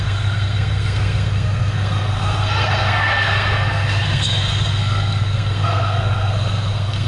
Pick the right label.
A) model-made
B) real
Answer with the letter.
A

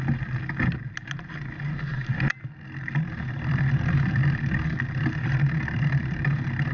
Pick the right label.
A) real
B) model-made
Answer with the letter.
A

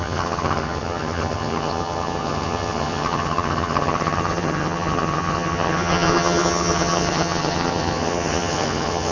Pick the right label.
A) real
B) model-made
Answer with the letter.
B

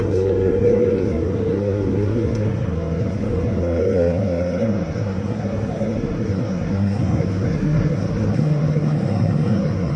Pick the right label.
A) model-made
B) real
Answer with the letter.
A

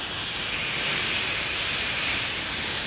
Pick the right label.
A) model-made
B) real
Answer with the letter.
A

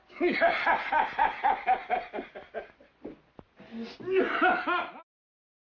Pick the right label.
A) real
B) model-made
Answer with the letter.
A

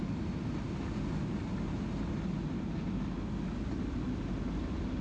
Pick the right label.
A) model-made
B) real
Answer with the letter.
B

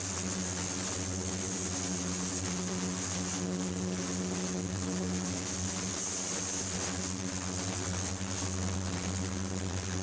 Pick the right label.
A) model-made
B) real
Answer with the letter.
B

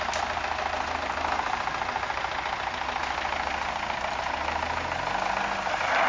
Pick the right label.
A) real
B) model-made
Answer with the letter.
A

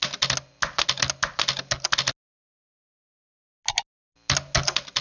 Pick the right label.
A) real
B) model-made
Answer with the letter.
A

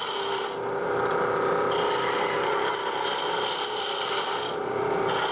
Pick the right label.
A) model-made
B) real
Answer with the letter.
A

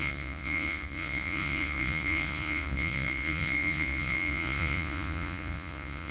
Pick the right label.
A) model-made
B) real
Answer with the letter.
A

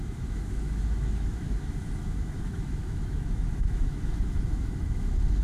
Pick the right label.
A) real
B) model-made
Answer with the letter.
B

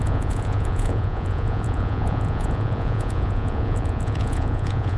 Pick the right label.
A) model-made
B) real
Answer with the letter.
A